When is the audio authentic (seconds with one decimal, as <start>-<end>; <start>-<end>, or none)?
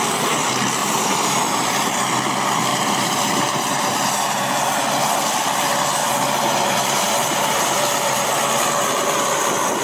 0.0-0.8; 1.7-2.7; 4.5-6.0; 8.3-9.8